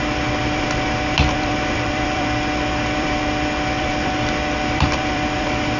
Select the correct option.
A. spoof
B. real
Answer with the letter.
A